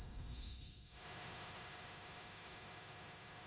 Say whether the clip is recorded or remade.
remade